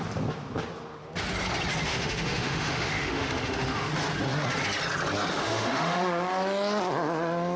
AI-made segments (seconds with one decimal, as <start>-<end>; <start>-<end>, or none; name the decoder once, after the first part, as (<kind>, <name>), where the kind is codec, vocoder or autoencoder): 1.9-3.9 (autoencoder, DAC-VAE); 5.3-6.1